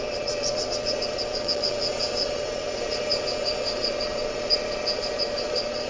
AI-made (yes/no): yes